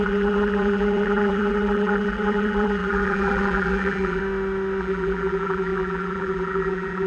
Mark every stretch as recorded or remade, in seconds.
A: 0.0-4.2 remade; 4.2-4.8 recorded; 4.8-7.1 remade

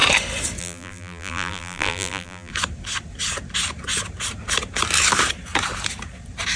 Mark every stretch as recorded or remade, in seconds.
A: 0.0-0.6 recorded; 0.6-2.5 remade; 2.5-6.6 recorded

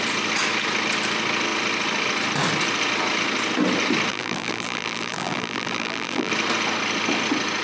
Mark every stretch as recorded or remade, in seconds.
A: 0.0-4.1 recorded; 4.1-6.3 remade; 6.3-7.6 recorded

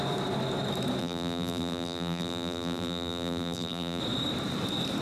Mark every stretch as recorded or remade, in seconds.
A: 0.0-1.0 recorded; 1.0-4.0 remade; 4.0-5.0 recorded

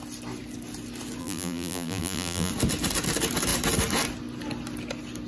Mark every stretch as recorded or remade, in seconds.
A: 0.0-1.2 recorded; 1.2-2.5 remade; 2.5-5.3 recorded

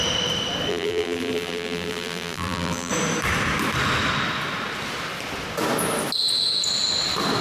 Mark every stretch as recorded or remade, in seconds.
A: 0.0-0.7 recorded; 0.7-2.9 remade; 2.9-7.4 recorded

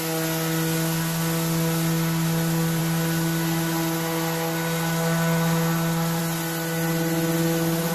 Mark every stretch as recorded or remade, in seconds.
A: 0.0-7.9 recorded

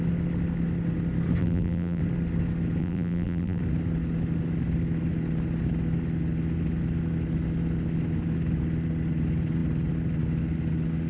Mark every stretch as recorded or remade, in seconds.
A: 0.0-1.4 recorded; 1.4-2.0 remade; 2.0-2.8 recorded; 2.8-3.6 remade; 3.6-11.1 recorded